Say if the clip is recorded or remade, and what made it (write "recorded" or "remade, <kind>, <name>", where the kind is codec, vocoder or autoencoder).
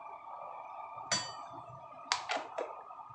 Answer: recorded